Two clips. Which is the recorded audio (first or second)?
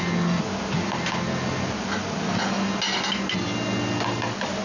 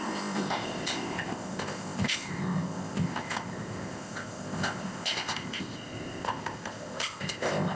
first